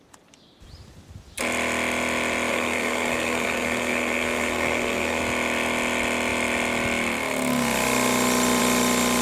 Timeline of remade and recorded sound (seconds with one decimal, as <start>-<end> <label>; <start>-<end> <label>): 0.0-2.5 recorded; 2.5-5.2 remade; 5.2-9.2 recorded